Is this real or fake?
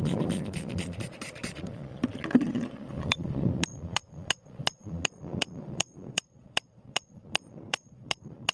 fake